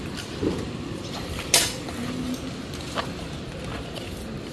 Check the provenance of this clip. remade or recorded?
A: recorded